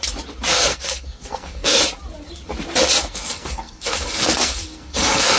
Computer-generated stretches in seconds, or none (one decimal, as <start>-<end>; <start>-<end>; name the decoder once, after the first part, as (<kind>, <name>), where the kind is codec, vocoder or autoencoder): 0.5-1.8 (codec, SNAC); 3.0-5.4